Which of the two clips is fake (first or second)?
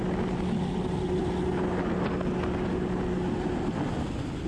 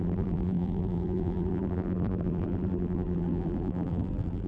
second